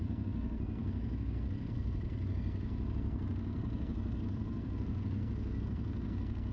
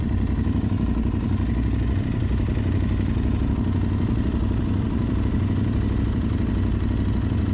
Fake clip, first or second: first